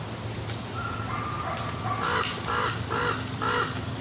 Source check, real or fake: real